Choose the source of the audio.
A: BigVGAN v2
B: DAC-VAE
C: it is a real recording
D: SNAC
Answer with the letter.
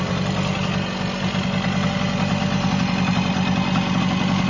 C